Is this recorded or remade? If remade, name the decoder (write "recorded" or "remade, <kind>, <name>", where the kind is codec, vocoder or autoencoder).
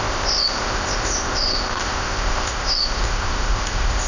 remade, codec, ZipCodec